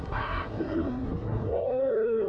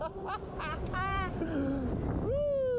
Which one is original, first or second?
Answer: second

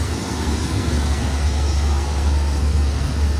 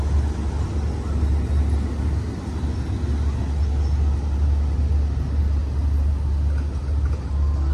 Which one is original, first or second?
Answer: second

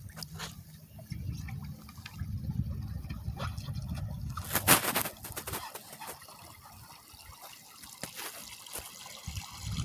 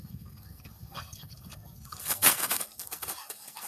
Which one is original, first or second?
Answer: first